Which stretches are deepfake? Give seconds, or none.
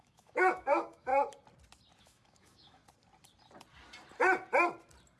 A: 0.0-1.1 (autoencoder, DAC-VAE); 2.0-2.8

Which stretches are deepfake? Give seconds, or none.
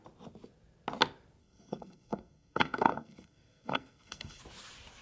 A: 1.4-4.4 (codec, SNAC)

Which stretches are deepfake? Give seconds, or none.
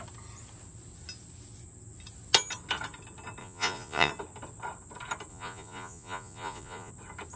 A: 3.4-4.1 (vocoder, Vocos); 5.3-6.9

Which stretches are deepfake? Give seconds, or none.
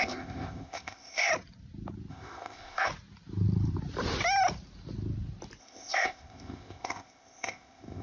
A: 0.0-1.3 (codec, ZipCodec); 2.1-2.9; 5.6-8.0